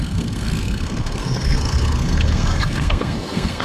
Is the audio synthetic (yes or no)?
yes